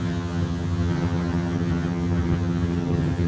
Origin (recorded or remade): remade